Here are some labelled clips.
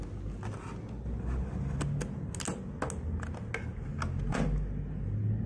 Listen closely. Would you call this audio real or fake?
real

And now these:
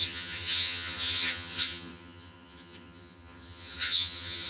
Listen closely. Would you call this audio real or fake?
fake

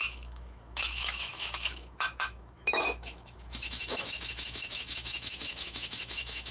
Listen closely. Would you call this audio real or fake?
fake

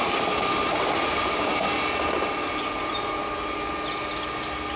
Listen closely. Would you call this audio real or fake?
real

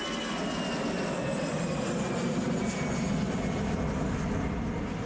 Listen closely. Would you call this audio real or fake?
real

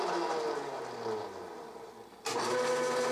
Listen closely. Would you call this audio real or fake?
real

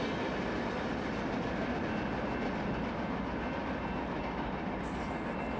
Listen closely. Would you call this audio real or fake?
real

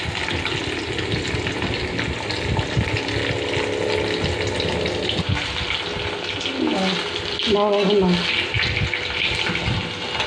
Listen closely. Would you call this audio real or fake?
real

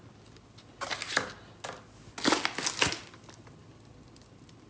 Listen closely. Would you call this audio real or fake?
real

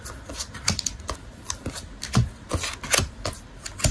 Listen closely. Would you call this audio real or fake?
real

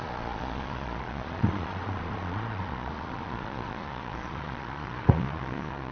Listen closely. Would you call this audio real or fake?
fake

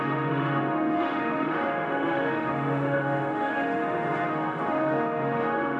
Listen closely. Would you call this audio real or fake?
fake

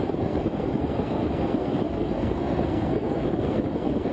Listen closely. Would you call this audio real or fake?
fake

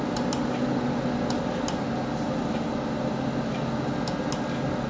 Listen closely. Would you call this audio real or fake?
real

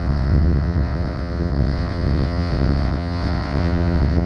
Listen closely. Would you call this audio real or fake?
fake